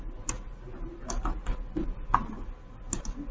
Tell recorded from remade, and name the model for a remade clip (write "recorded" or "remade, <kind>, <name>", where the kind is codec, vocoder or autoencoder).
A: recorded